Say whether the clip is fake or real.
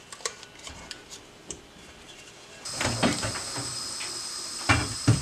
fake